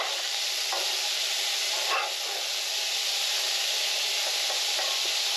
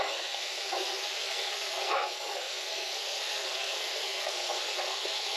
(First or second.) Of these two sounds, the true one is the first